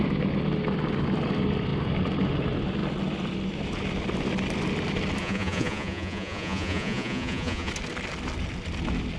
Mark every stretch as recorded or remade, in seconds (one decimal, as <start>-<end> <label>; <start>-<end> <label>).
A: 0.0-5.2 recorded; 5.2-7.7 remade; 7.7-9.2 recorded